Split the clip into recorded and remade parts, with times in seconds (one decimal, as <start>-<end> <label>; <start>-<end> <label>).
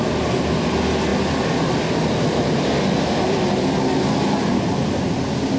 0.0-5.6 recorded